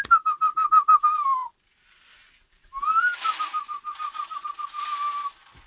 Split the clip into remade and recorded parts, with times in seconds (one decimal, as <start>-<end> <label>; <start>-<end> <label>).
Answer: 0.0-5.7 recorded